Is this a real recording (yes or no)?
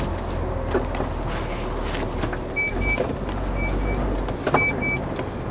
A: yes